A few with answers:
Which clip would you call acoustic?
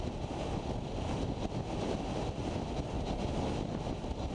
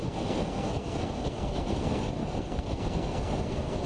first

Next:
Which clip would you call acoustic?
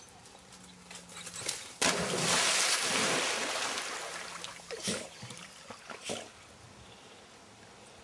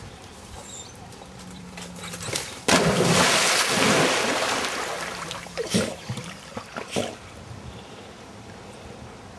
first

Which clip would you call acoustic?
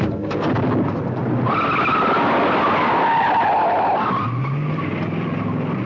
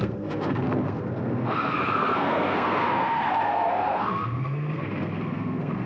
first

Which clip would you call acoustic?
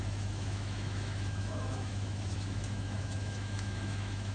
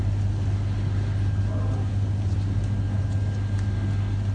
second